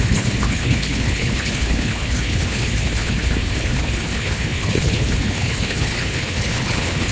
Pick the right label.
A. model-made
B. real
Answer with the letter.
A